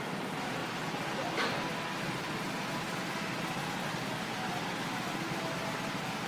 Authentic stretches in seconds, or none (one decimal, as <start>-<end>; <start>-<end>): 0.0-6.3